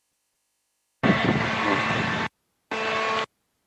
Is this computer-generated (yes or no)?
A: no